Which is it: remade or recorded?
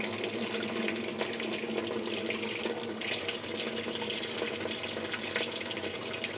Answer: recorded